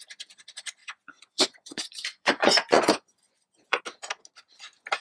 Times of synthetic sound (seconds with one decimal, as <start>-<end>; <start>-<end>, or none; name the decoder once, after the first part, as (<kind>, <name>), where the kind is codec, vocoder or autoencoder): 0.8-3.8 (vocoder, Vocos)